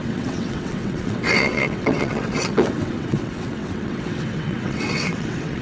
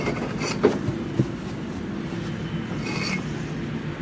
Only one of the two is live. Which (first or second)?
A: second